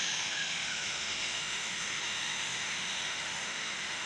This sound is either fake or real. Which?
fake